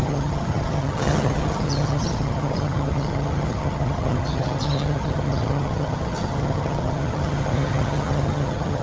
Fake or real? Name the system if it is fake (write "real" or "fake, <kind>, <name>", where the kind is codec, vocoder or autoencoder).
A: fake, vocoder, HiFi-GAN